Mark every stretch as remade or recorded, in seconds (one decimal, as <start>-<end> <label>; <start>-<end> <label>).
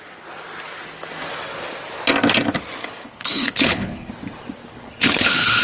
0.0-2.8 recorded; 2.8-4.1 remade; 4.1-4.7 recorded; 4.7-5.6 remade